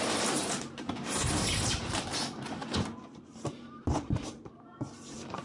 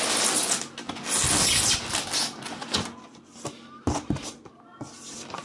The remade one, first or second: first